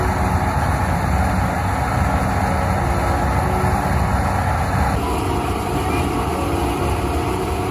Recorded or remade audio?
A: recorded